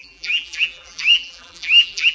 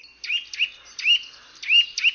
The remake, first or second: first